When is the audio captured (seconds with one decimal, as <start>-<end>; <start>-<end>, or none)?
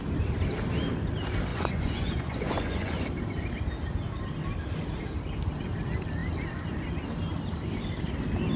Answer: 0.0-1.5; 3.0-8.6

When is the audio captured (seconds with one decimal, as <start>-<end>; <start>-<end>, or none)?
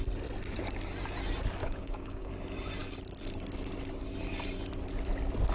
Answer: 0.0-1.6; 2.3-5.5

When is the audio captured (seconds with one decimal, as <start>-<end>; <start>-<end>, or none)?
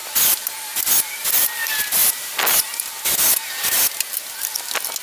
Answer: 0.0-5.0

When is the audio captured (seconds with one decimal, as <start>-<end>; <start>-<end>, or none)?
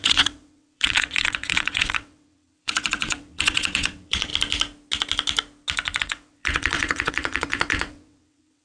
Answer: 4.3-6.0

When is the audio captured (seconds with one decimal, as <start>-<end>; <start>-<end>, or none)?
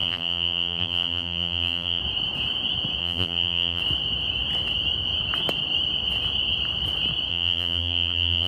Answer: 2.0-3.0; 3.8-7.3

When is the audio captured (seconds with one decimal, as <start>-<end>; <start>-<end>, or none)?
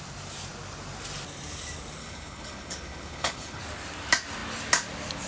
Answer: 0.0-2.0; 3.6-5.3